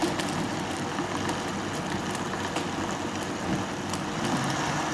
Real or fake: real